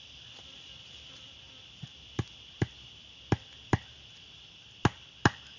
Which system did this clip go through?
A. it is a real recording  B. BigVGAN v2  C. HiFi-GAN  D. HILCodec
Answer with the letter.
A